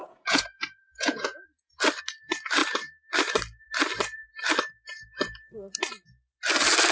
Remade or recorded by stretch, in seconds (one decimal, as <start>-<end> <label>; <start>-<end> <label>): 0.0-1.8 remade; 1.8-6.9 recorded